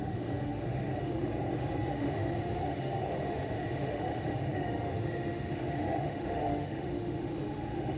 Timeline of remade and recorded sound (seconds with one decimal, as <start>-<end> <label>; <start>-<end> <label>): 0.0-1.3 remade; 1.3-1.9 recorded; 1.9-8.0 remade

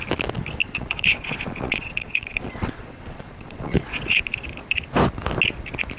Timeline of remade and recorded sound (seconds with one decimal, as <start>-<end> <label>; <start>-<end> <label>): 0.0-0.6 recorded; 0.6-4.2 remade; 4.2-6.0 recorded

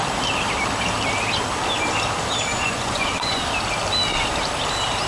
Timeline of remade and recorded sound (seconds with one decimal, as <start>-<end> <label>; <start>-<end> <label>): 0.0-2.5 recorded; 2.5-3.4 remade; 3.4-5.1 recorded

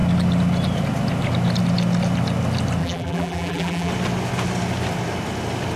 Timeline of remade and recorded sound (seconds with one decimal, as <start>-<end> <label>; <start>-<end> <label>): 0.0-2.8 recorded; 2.8-3.9 remade; 3.9-5.8 recorded

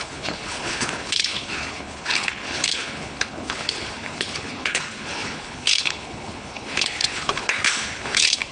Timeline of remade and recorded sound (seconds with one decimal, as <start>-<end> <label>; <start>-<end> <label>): 0.0-8.5 remade

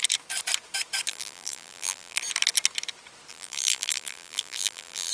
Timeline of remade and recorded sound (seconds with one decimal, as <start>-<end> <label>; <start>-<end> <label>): 0.0-1.1 recorded; 1.1-2.2 remade; 2.2-3.3 recorded; 3.3-5.1 remade